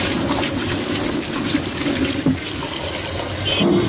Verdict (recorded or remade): recorded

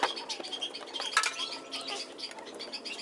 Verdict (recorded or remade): recorded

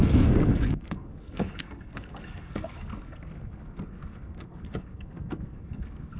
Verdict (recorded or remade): remade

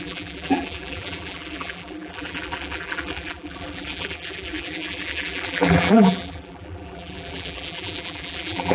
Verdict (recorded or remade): remade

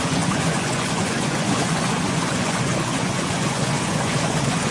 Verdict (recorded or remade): remade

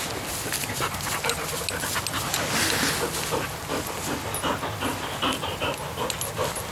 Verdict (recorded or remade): recorded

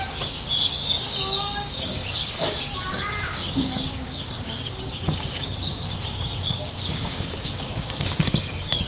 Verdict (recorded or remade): remade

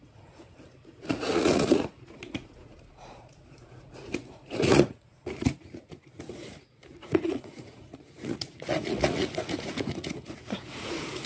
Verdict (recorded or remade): remade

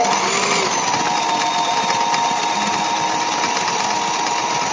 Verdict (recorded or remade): recorded